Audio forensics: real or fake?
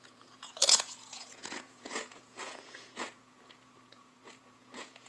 fake